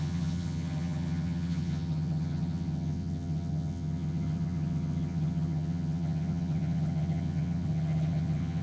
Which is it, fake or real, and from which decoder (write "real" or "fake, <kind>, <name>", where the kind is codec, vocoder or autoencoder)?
fake, vocoder, HiFi-GAN